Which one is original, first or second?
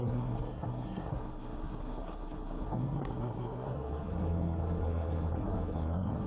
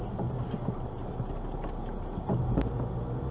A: second